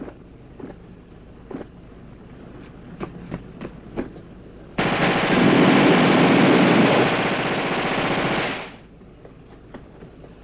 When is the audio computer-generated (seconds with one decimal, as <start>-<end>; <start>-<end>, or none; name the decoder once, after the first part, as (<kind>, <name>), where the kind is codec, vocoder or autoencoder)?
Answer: none